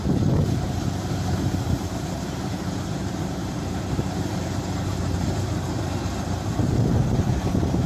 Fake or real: fake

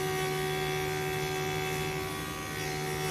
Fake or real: real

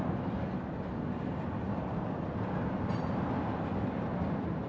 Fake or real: real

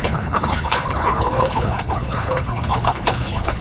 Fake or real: fake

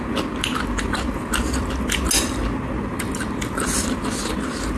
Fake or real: real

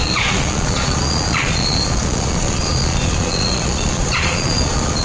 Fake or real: fake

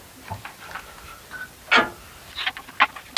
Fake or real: real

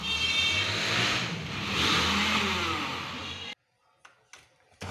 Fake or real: real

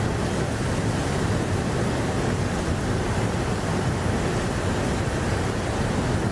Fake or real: real